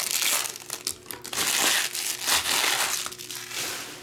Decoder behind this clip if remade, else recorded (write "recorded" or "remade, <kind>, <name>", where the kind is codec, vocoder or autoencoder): recorded